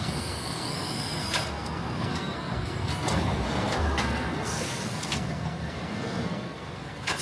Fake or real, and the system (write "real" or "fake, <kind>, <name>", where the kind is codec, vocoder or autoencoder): fake, codec, SNAC